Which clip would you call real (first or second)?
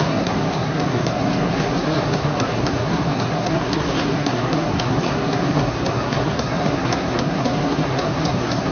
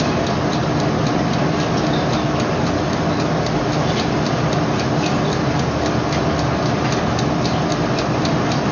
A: second